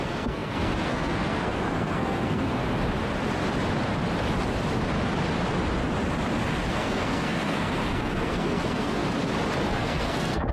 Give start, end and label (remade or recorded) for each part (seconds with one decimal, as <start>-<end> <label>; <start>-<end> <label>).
0.0-2.6 remade; 2.6-6.7 recorded; 6.7-9.0 remade; 9.0-9.7 recorded; 9.7-10.5 remade

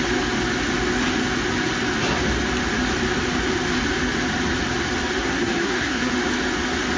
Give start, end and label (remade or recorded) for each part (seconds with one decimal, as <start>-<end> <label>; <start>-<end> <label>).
0.0-5.2 recorded; 5.2-6.1 remade; 6.1-7.0 recorded

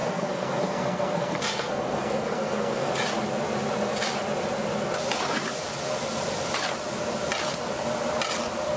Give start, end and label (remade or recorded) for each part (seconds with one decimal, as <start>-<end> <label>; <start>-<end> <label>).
0.0-2.9 remade; 2.9-8.8 recorded

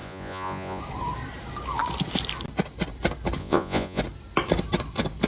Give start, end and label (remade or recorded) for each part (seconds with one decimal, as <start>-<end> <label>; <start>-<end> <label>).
0.0-0.8 remade; 0.8-3.4 recorded; 3.4-4.0 remade; 4.0-5.3 recorded

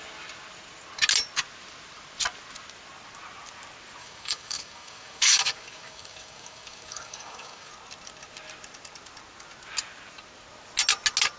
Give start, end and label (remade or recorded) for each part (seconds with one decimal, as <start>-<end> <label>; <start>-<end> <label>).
0.0-4.0 recorded; 4.0-7.7 remade; 7.7-11.4 recorded

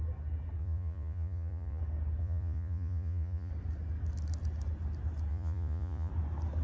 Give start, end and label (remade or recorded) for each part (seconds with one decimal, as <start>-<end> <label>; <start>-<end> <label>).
0.0-0.6 recorded; 0.6-1.8 remade; 1.8-2.2 recorded; 2.2-3.5 remade; 3.5-5.3 recorded; 5.3-6.1 remade; 6.1-6.6 recorded

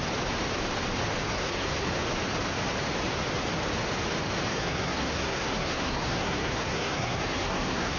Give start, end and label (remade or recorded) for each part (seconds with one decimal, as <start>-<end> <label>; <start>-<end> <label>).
0.0-1.3 recorded; 1.3-1.9 remade; 1.9-4.5 recorded; 4.5-8.0 remade